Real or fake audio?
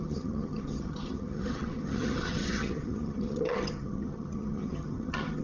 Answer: fake